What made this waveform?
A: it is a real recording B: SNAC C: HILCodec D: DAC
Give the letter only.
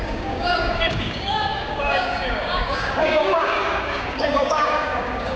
D